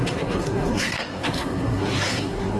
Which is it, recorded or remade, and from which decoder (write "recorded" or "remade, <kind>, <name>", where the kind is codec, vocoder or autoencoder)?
remade, codec, SNAC